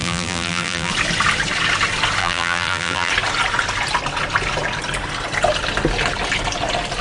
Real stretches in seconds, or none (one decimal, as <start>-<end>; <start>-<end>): 0.9-2.2; 3.1-7.0